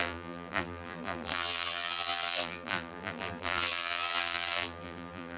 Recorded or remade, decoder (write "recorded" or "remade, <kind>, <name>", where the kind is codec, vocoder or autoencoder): remade, vocoder, BigVGAN v2